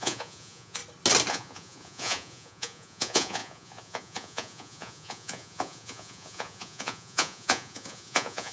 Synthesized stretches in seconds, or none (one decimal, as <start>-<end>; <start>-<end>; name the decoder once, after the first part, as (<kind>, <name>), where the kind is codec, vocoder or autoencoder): 0.0-0.8 (vocoder, Vocos); 1.3-8.5